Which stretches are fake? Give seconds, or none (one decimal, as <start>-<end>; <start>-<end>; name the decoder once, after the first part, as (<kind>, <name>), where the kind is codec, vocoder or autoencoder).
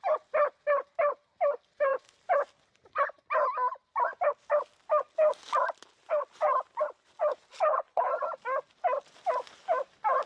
7.5-8.1 (codec, HILCodec)